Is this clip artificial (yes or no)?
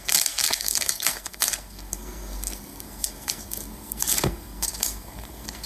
yes